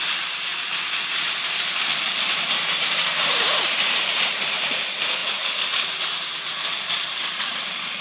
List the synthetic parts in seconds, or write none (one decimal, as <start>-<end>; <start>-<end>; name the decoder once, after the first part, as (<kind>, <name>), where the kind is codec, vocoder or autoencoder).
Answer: 0.0-0.5 (vocoder, BigVGAN v2); 1.9-8.0